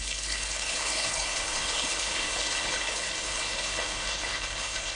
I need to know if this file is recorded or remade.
remade